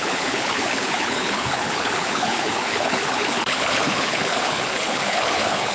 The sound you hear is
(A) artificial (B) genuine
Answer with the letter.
A